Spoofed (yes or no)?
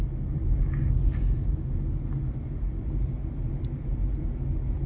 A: no